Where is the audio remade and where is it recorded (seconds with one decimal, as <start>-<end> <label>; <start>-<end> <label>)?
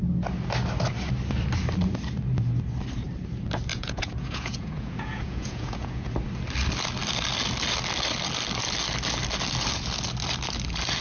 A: 0.0-3.7 recorded; 3.7-6.1 remade; 6.1-11.0 recorded